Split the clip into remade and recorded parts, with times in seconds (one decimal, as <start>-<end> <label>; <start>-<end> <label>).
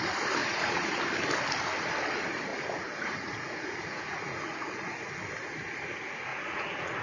0.0-0.4 recorded; 0.4-1.0 remade; 1.0-2.5 recorded; 2.5-5.1 remade; 5.1-6.3 recorded; 6.3-7.0 remade